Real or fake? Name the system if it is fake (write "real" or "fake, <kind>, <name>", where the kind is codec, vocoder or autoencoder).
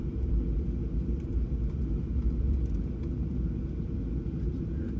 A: real